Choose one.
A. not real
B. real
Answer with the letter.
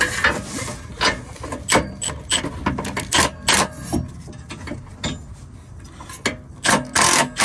B